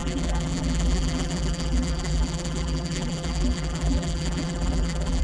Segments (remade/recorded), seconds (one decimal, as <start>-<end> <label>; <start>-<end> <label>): 0.0-5.2 remade